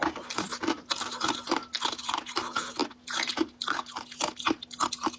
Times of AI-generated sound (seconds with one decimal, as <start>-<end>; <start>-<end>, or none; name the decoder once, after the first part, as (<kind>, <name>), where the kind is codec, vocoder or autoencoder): none